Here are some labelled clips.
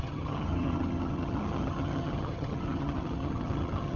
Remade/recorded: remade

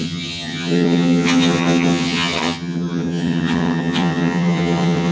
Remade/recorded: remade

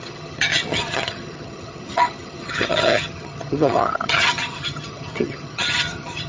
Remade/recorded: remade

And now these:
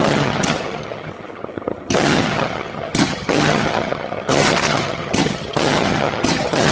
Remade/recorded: remade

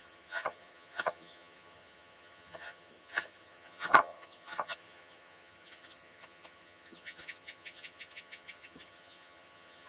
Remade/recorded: remade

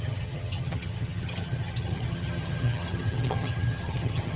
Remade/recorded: remade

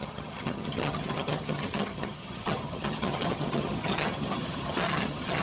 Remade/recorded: remade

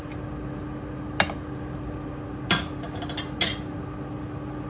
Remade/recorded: recorded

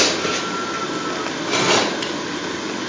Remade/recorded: recorded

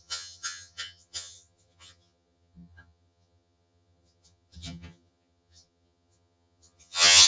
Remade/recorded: remade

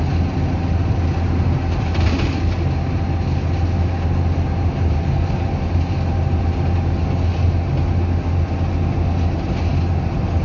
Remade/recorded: recorded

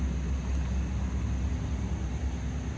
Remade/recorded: recorded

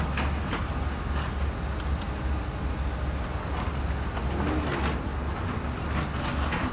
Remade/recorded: recorded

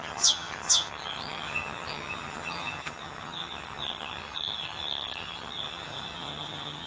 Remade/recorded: remade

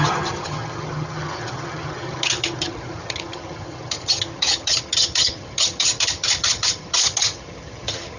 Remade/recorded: remade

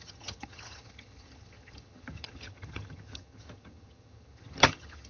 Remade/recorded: remade